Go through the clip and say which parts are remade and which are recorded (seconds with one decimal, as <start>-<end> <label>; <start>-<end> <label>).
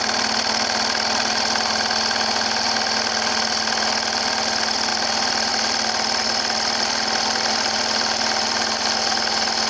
0.0-9.7 recorded